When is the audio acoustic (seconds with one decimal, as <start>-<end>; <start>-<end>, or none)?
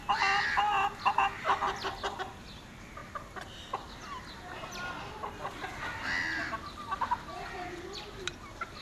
0.0-8.8